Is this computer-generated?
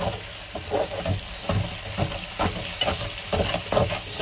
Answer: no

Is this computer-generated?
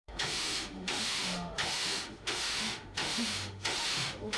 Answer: yes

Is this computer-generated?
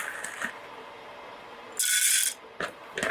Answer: no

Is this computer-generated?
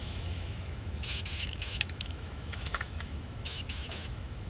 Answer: yes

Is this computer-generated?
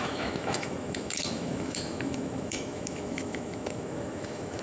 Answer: yes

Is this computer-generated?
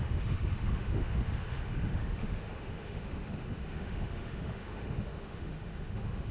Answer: yes